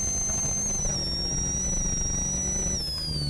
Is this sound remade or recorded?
recorded